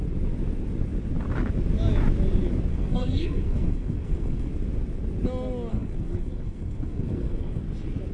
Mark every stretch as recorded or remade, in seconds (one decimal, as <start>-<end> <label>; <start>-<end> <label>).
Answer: 0.0-2.7 recorded; 2.7-4.5 remade; 4.5-5.7 recorded; 5.7-7.6 remade; 7.6-8.1 recorded